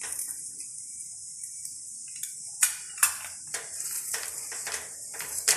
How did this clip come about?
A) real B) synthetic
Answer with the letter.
B